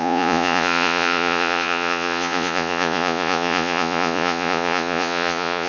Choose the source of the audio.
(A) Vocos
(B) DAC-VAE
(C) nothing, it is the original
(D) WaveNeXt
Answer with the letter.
A